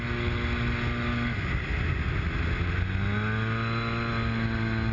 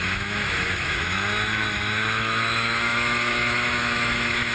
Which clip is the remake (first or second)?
second